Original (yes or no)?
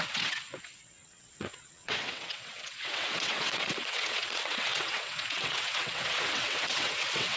no